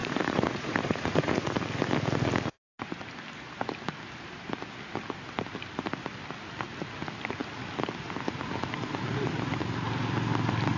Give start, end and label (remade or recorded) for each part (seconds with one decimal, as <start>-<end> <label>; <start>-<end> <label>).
0.0-1.6 remade; 1.6-10.8 recorded